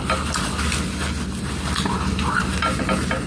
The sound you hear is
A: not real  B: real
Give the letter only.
B